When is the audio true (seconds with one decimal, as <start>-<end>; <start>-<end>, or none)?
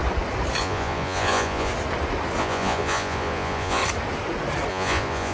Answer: 0.0-0.6; 1.7-2.4; 3.8-4.7